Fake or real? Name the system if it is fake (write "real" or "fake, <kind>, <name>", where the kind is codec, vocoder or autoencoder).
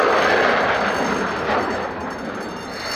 real